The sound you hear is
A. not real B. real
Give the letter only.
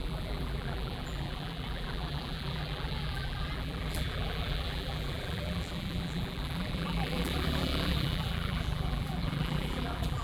A